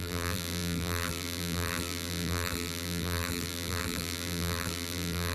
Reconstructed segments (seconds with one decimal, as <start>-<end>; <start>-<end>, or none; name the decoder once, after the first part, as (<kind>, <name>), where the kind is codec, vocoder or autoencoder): 0.0-5.3 (vocoder, BigVGAN v2)